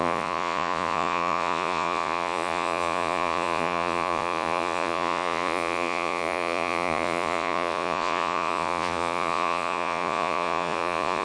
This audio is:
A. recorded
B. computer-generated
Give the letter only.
B